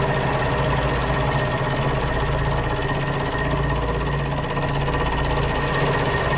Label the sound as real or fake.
real